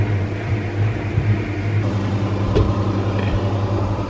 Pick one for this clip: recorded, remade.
remade